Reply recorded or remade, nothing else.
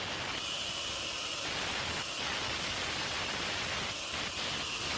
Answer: recorded